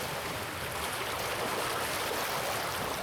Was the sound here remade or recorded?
recorded